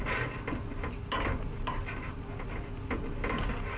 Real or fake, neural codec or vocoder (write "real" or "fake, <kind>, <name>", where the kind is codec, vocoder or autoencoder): real